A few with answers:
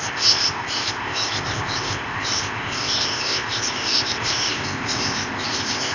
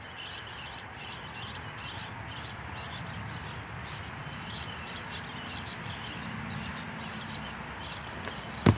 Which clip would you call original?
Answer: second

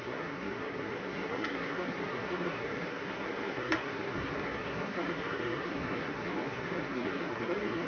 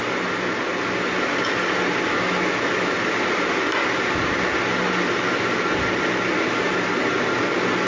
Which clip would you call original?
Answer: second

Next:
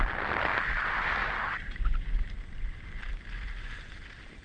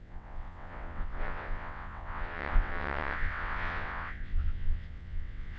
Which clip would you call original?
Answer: first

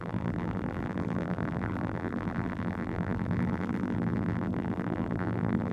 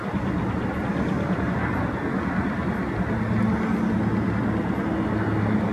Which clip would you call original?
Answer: second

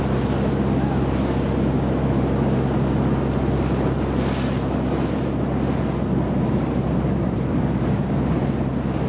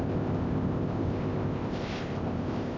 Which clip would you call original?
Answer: first